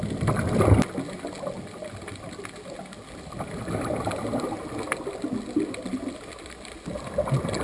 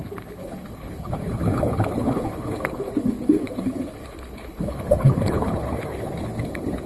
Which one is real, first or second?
first